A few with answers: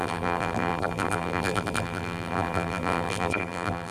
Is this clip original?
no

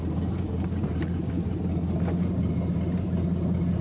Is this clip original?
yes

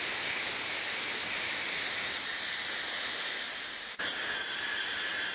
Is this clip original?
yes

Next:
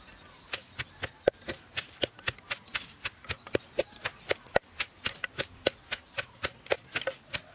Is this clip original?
yes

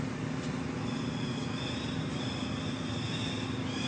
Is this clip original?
yes